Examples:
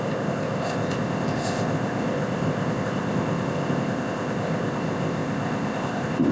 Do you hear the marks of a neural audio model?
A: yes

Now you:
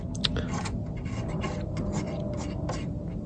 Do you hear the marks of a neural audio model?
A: no